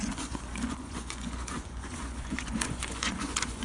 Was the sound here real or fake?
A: fake